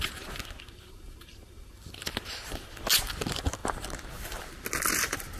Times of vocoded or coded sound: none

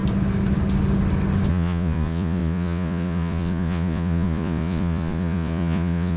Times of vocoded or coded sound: 1.5-6.2 (vocoder, Vocos)

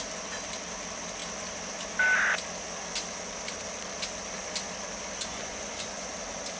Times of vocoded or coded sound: 5.3-6.1 (vocoder, Vocos)

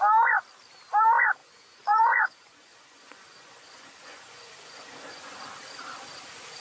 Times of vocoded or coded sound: 1.4-5.4 (vocoder, Vocos)